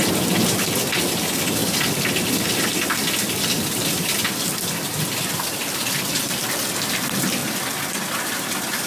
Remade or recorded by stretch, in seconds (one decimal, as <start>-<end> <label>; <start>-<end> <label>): 0.0-8.9 recorded